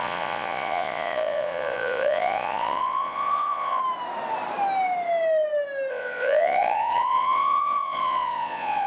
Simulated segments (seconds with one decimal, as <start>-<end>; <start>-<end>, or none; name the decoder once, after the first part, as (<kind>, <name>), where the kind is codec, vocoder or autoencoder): 0.0-3.8 (vocoder, Vocos); 5.9-8.9